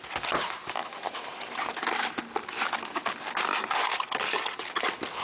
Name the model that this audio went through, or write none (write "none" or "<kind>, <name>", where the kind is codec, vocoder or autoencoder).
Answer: none